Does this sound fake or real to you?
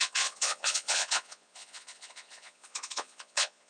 fake